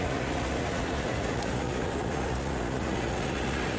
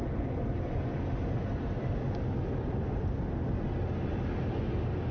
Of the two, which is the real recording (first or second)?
second